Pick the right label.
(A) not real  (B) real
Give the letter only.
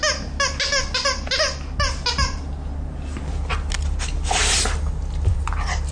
B